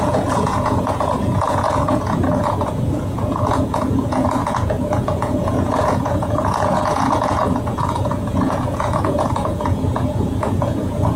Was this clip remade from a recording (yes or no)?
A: yes